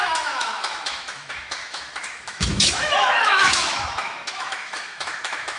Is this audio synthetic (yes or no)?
yes